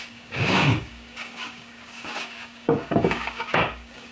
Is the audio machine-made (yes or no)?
yes